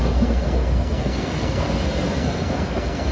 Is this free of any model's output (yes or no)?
no